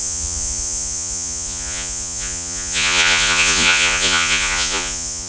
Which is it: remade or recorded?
remade